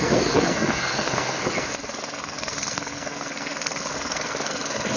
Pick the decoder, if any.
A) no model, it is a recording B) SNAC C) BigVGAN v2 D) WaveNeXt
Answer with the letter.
B